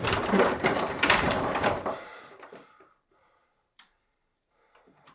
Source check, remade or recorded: remade